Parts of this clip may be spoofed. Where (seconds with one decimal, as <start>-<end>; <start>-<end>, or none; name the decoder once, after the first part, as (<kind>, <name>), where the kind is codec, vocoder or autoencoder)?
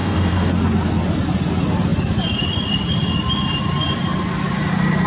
0.0-0.5 (codec, DAC)